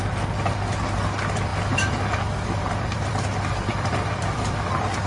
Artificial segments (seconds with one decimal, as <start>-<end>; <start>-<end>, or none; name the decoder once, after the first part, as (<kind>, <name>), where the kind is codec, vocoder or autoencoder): 2.6-5.1 (vocoder, BigVGAN v2)